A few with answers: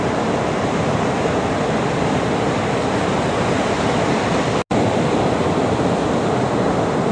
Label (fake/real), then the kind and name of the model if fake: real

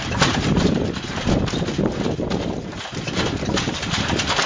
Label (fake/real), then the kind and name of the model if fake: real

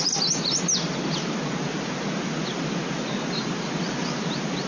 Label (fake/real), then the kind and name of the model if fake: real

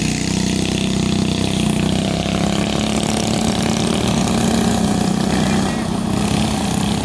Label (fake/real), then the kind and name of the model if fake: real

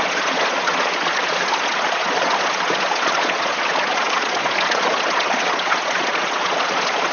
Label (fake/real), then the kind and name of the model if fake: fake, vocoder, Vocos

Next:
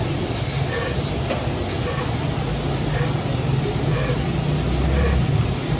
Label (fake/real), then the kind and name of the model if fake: real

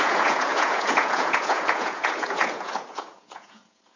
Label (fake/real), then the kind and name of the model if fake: fake, vocoder, Vocos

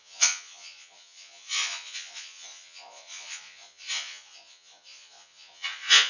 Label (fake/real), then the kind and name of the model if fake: fake, vocoder, Vocos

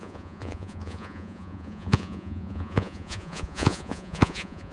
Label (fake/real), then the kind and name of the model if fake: fake, vocoder, Vocos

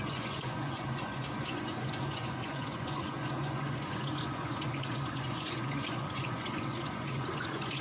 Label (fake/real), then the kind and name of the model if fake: fake, vocoder, Vocos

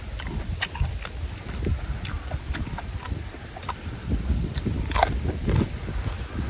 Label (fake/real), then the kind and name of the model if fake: real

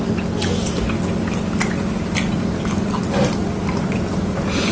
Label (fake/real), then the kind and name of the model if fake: real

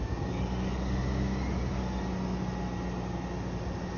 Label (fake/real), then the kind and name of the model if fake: real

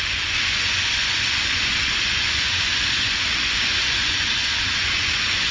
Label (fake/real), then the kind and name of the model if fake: fake, vocoder, Vocos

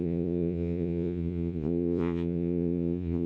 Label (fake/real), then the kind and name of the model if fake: fake, vocoder, Vocos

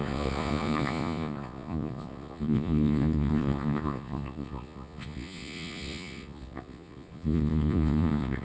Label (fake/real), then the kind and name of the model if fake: fake, vocoder, Vocos